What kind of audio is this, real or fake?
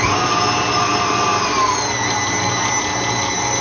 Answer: real